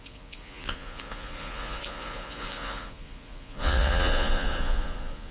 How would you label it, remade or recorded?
remade